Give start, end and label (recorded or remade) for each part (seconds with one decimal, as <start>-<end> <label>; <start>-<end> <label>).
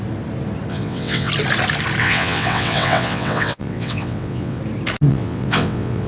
0.0-0.7 recorded; 0.7-1.3 remade; 1.3-2.0 recorded; 2.0-4.6 remade; 4.6-5.1 recorded; 5.1-6.1 remade